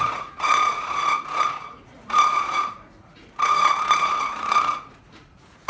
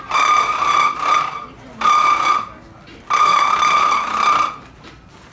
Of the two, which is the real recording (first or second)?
second